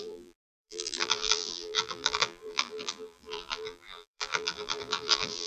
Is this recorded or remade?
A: remade